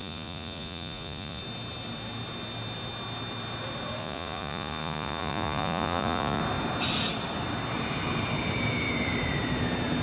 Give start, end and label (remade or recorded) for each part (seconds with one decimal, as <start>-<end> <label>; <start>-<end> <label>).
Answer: 0.0-1.4 remade; 1.4-4.0 recorded; 4.0-6.4 remade; 6.4-10.0 recorded